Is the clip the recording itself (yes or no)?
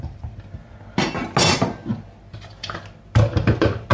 yes